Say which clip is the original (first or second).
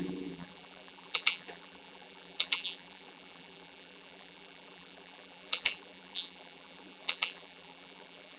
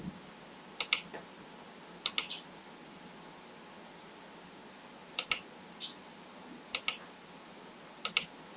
second